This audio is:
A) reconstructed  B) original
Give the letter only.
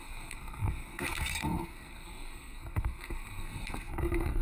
A